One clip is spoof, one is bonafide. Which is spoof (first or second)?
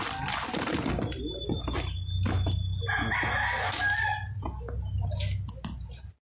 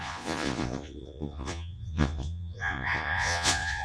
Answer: second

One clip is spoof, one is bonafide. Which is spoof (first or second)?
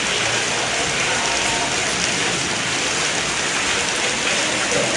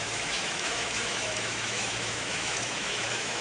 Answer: second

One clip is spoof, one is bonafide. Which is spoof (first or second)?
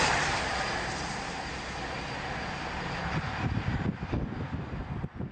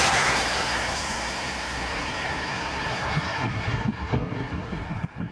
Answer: second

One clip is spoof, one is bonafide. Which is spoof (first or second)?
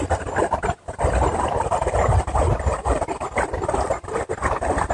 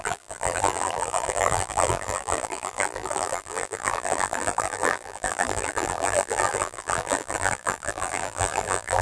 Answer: second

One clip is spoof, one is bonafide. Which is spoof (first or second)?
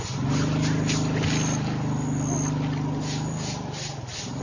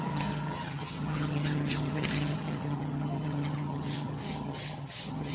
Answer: second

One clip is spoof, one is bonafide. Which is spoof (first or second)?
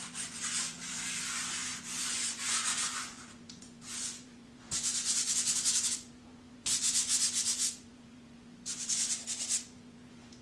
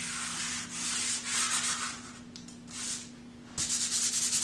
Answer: first